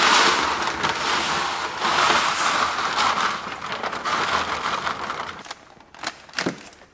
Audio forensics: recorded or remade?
recorded